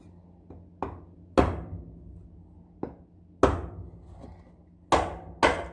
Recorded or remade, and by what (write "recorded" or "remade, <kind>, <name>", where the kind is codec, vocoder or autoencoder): recorded